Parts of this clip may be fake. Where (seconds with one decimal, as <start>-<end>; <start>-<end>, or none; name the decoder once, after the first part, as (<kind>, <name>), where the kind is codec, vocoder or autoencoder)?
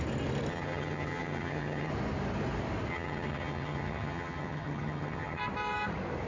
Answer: 0.5-1.9 (vocoder, HiFi-GAN); 2.9-5.4